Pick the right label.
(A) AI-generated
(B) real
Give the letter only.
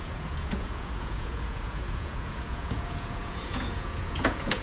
A